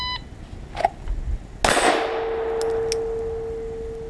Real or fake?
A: real